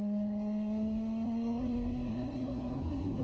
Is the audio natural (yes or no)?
no